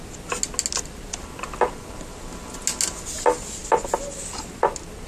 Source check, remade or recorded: recorded